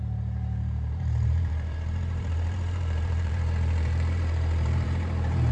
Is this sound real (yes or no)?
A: no